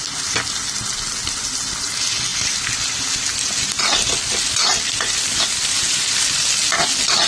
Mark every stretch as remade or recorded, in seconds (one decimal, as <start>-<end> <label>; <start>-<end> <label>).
0.0-7.3 recorded